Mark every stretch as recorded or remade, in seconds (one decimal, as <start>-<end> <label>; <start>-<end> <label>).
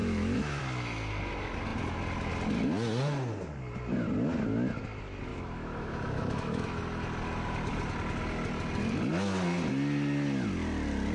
0.0-0.6 remade; 0.6-5.3 recorded; 5.3-6.8 remade; 6.8-11.1 recorded